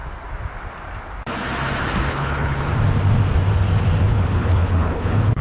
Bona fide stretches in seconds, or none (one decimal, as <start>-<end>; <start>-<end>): 0.0-2.1; 2.6-4.0

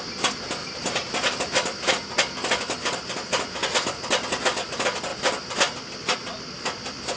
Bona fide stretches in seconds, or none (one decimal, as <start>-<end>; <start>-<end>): 0.0-0.6; 4.2-7.2

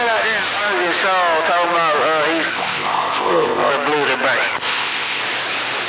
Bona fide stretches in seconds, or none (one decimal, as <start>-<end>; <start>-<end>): 0.0-2.5; 3.7-4.6; 5.2-5.9

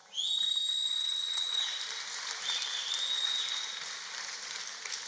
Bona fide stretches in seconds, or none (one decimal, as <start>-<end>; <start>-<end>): 0.0-0.7; 1.6-5.1

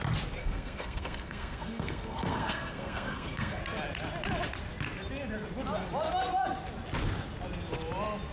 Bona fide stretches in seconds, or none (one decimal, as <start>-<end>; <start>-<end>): 0.0-0.4; 3.6-8.3